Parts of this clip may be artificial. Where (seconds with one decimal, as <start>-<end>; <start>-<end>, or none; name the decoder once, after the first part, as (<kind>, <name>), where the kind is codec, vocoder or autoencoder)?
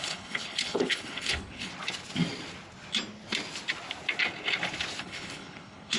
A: 0.0-1.7 (codec, HILCodec); 5.0-6.0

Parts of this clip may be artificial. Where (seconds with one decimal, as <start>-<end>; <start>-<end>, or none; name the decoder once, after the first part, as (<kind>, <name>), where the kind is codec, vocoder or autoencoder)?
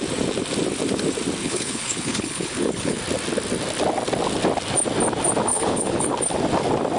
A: 1.4-3.0 (codec, HILCodec); 5.5-6.1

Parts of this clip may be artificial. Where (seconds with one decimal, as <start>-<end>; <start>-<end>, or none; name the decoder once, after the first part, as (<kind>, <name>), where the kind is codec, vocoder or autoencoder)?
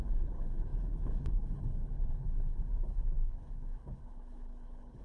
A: 0.0-5.0 (codec, HILCodec)